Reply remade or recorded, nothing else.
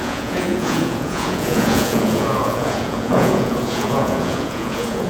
remade